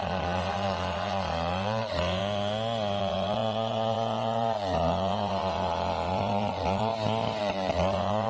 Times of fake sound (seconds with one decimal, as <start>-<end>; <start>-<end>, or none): 0.0-2.2; 3.0-6.9; 7.4-8.3